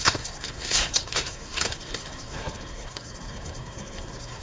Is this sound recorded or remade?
remade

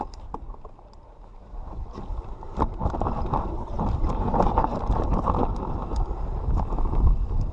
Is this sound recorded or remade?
recorded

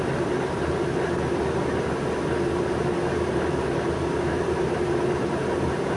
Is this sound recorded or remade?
recorded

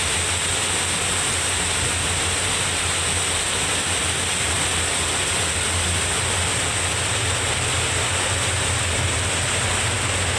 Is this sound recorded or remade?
recorded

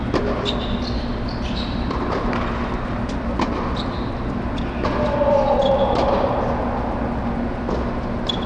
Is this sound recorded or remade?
recorded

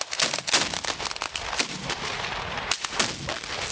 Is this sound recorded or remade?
recorded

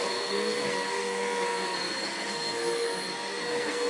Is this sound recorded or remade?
remade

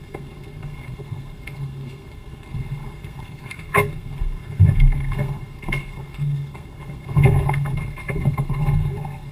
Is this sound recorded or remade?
remade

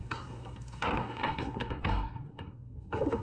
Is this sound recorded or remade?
remade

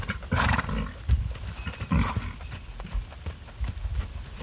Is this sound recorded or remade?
recorded